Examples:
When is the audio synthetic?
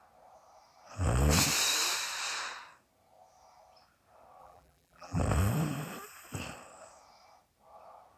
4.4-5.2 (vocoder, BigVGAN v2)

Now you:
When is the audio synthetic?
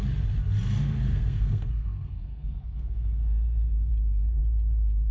0.8-3.9 (codec, SNAC)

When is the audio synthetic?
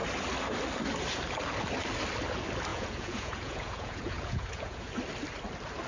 2.7-4.9 (vocoder, Vocos)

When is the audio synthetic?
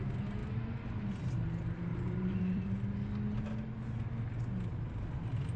1.9-2.7 (vocoder, BigVGAN v2)